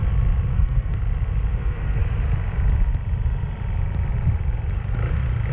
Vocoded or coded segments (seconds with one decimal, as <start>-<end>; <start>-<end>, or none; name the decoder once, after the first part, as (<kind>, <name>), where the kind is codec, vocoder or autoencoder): 0.5-1.0 (codec, SNAC); 1.5-2.0